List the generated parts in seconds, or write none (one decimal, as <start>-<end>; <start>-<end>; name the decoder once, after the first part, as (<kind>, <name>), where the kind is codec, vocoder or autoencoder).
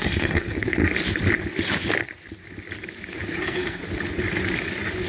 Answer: 0.0-0.8 (codec, SNAC); 3.4-3.8